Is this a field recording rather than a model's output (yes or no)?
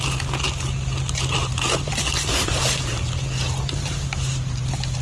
yes